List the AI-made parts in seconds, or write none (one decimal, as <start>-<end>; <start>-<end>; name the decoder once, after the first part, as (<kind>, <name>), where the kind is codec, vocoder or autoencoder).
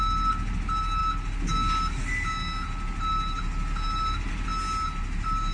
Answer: none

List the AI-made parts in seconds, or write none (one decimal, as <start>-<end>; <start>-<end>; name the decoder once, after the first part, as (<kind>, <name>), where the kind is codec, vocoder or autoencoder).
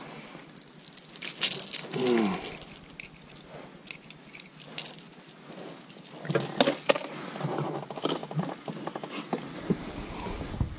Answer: none